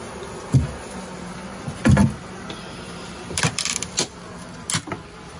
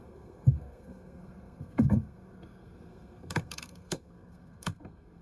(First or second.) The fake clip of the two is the second